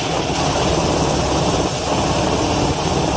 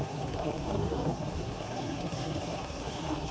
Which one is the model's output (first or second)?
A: second